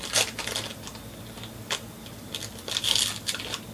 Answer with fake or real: real